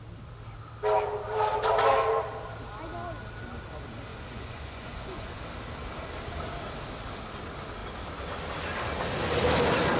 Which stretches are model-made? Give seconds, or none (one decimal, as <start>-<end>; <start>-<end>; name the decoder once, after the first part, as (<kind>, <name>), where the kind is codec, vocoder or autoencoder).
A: 4.1-5.4 (vocoder, Vocos)